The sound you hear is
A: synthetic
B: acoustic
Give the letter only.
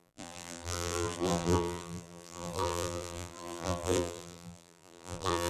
A